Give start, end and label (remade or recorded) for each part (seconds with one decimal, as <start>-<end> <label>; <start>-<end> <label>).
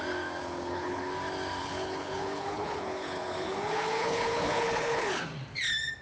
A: 0.0-0.4 recorded; 0.4-1.1 remade; 1.1-1.6 recorded; 1.6-5.2 remade; 5.2-6.0 recorded